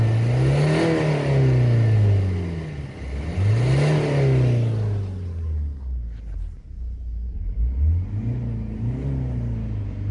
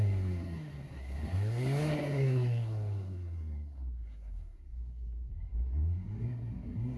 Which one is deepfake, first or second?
second